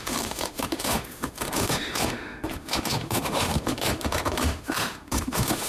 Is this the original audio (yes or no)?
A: no